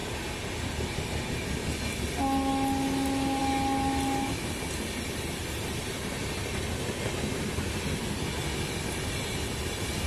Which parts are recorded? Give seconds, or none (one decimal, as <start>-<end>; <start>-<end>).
0.0-10.1

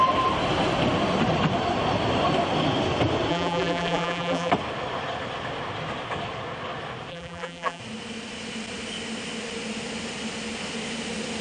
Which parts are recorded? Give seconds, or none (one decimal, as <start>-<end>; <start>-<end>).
0.0-3.3; 4.5-7.1; 7.8-11.4